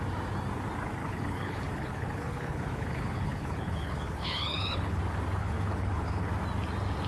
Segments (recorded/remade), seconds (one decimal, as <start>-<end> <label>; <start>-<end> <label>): 0.0-1.0 recorded; 1.0-5.0 remade; 5.0-5.4 recorded; 5.4-6.3 remade; 6.3-7.1 recorded